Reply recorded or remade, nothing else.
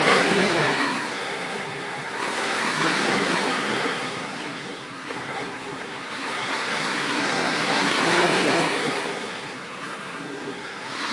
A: remade